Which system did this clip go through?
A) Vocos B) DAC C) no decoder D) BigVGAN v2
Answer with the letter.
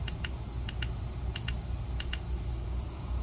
C